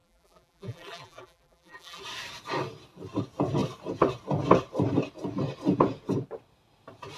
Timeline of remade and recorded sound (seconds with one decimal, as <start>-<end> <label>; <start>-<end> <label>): 0.0-2.0 remade; 2.0-7.2 recorded